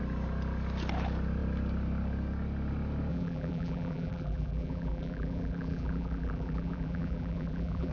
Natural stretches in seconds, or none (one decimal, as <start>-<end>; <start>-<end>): 0.0-3.1